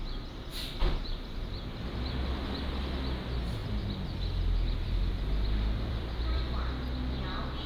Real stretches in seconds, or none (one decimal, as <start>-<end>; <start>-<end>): 0.0-0.5; 2.6-3.6; 6.4-7.7